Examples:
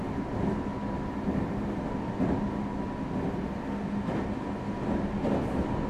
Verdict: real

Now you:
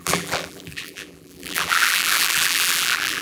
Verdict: fake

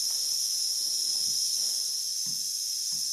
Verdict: real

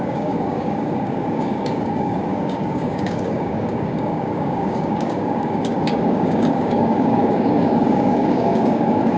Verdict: fake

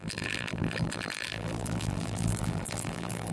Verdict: fake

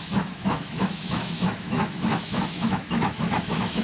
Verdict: fake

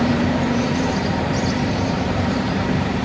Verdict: fake